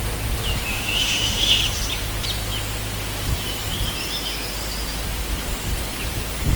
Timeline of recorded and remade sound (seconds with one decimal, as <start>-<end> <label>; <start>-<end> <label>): 0.0-0.7 recorded; 0.7-1.6 remade; 1.6-6.6 recorded

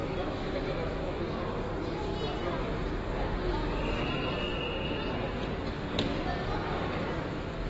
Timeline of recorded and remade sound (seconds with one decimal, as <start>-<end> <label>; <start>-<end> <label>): 0.0-1.2 remade; 1.2-7.7 recorded

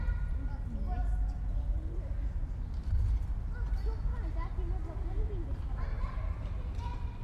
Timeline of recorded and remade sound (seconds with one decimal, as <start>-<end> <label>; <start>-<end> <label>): 0.0-7.2 recorded